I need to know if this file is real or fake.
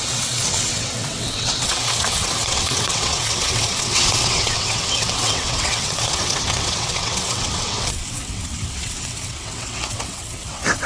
fake